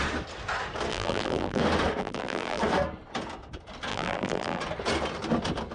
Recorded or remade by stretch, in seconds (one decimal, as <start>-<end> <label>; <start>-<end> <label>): 0.0-0.9 recorded; 0.9-1.6 remade; 1.6-2.0 recorded; 2.0-2.6 remade; 2.6-3.9 recorded; 3.9-4.6 remade; 4.6-5.7 recorded